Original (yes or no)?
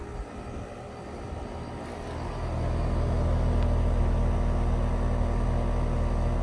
yes